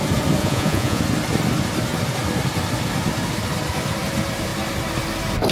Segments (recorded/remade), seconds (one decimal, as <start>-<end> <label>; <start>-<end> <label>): 0.0-0.4 recorded; 0.4-1.0 remade; 1.0-5.5 recorded